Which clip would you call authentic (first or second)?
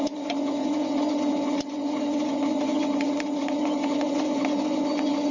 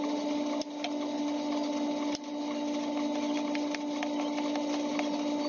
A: second